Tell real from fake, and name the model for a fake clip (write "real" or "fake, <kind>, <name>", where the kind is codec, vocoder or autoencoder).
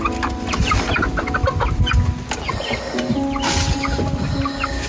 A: real